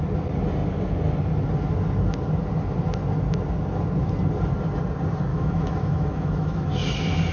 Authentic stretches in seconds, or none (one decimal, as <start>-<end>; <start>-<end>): 0.0-5.3; 6.7-7.3